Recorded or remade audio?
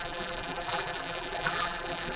remade